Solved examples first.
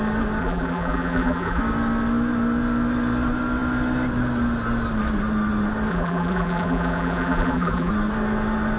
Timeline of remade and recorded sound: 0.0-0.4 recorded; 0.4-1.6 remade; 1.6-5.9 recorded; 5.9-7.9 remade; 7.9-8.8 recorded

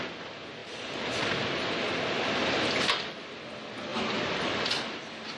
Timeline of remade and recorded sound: 0.0-3.9 recorded; 3.9-4.5 remade; 4.5-5.4 recorded

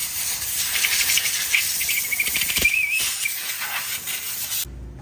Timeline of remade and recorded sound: 0.0-3.0 remade; 3.0-5.0 recorded

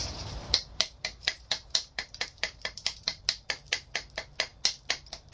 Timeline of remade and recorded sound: 0.0-3.2 remade; 3.2-5.3 recorded

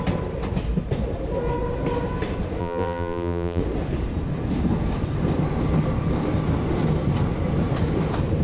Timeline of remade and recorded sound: 0.0-2.6 recorded; 2.6-3.6 remade; 3.6-8.4 recorded